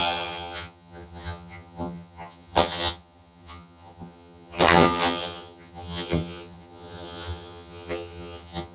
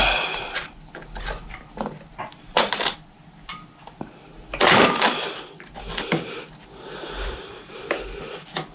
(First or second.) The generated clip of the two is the first